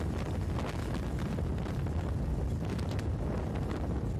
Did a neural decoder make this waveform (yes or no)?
no